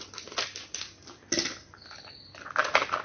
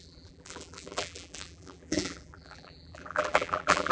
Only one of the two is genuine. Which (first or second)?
first